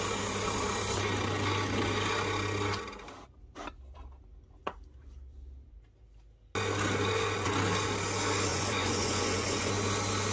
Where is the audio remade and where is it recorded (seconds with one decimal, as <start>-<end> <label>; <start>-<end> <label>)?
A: 0.0-8.5 recorded; 8.5-9.7 remade; 9.7-10.3 recorded